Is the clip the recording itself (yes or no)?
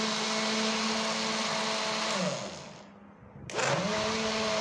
yes